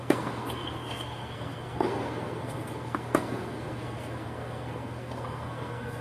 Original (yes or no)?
no